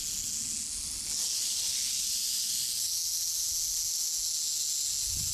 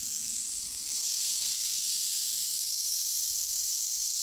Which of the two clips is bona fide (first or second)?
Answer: first